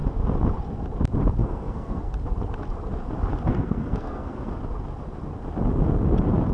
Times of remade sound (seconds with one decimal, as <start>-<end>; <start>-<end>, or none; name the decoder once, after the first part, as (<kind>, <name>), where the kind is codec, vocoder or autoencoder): 1.4-2.1 (codec, SNAC); 3.5-4.5